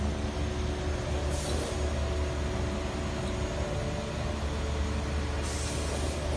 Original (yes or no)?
yes